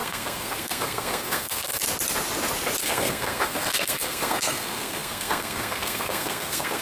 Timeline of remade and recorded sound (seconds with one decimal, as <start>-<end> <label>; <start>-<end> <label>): 0.0-1.8 remade; 1.8-2.8 recorded; 2.8-6.8 remade